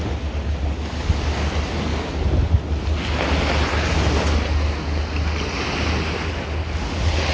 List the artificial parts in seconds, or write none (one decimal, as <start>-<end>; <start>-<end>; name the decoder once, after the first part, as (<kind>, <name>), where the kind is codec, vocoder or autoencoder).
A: none